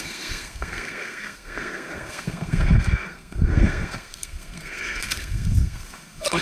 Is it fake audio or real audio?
fake